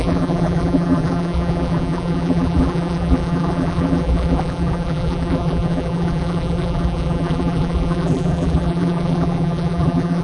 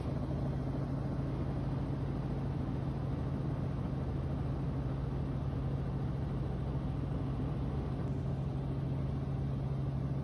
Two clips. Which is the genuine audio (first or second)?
second